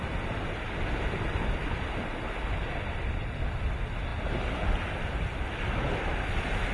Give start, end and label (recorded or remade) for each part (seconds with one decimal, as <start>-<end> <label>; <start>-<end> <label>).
0.0-6.7 recorded